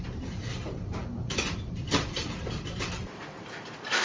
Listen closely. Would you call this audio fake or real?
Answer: fake